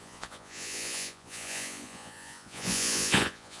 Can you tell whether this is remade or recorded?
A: remade